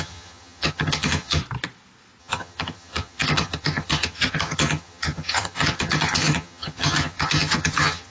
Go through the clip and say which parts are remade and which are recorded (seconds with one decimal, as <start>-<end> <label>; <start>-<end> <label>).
0.0-1.4 remade; 1.4-2.2 recorded; 2.2-8.1 remade